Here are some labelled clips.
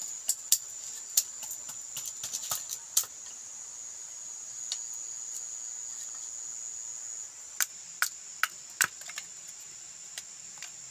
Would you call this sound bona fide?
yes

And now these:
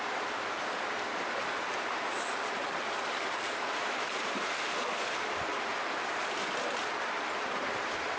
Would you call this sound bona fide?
no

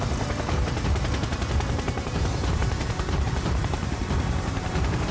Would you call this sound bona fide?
no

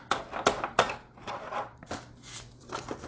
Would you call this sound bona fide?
no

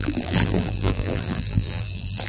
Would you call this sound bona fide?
no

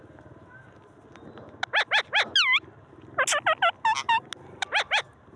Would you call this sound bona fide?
yes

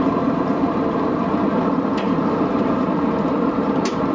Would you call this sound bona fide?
no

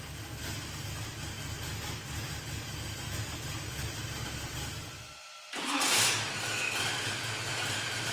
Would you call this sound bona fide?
yes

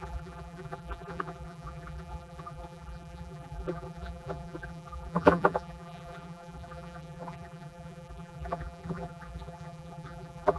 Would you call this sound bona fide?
no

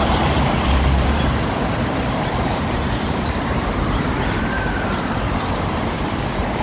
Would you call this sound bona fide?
no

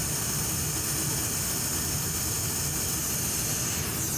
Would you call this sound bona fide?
yes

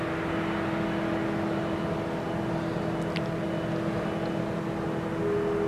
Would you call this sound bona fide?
yes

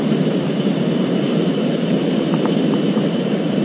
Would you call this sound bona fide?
no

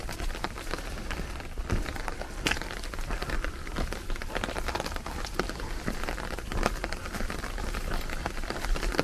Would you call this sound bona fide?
no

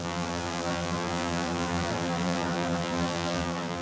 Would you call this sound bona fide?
no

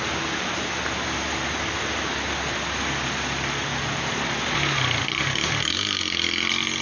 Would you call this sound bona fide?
yes